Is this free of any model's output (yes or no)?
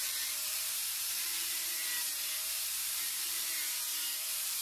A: no